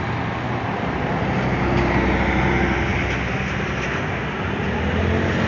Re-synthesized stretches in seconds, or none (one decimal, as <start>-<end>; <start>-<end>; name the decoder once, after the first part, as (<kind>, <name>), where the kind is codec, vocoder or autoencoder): none